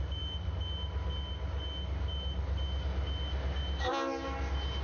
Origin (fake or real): real